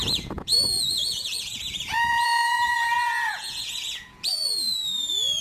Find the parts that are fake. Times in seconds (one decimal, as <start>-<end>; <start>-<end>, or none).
0.0-5.4